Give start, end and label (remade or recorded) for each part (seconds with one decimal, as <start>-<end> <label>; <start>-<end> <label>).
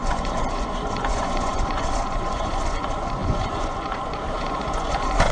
0.0-5.3 remade